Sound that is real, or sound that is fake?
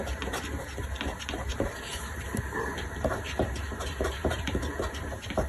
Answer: fake